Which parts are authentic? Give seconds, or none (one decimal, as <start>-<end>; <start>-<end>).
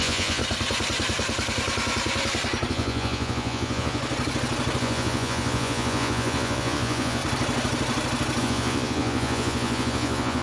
0.4-2.7; 4.0-4.8; 7.2-8.4